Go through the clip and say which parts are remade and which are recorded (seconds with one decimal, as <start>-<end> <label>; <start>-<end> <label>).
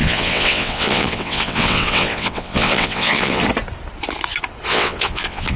0.0-3.4 remade; 3.4-4.7 recorded; 4.7-5.6 remade